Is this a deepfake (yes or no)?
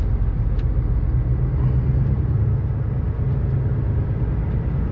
no